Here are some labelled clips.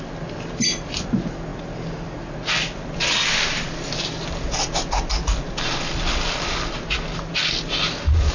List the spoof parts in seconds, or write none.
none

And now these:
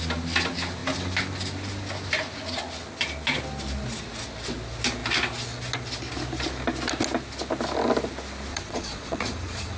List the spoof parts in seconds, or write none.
8.5-9.8 (vocoder, Vocos)

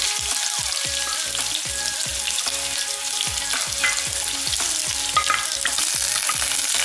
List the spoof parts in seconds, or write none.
none

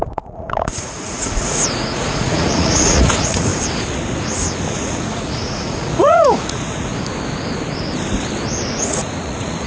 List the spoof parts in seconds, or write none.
0.0-3.5 (vocoder, Vocos); 4.7-6.9; 8.7-9.7

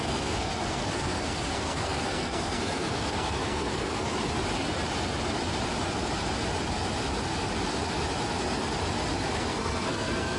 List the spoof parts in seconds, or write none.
0.0-4.1 (codec, SNAC); 9.3-10.4

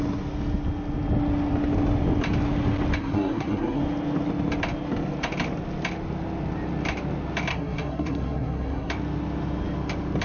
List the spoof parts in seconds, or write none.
3.0-3.8 (codec, SNAC); 7.5-8.9

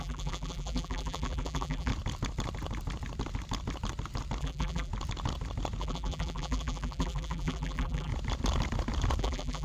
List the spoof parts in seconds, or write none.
0.0-1.9 (vocoder, BigVGAN v2); 4.4-4.9; 5.8-8.1; 9.2-9.6

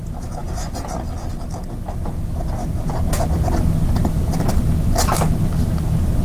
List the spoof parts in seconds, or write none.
none